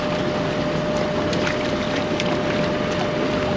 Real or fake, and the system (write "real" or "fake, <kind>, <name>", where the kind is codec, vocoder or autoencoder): real